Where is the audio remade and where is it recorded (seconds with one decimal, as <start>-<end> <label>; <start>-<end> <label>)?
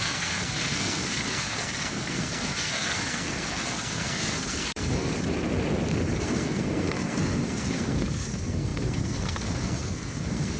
0.0-5.1 remade; 5.1-6.2 recorded; 6.2-10.6 remade